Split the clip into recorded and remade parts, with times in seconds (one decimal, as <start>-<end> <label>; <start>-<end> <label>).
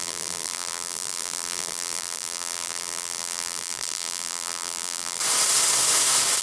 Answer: 0.0-5.2 remade; 5.2-6.4 recorded